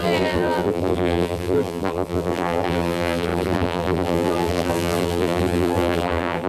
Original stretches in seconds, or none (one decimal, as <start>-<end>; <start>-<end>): none